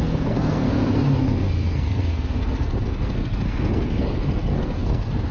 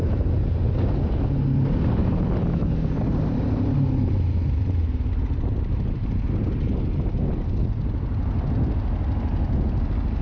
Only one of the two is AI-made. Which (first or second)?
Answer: first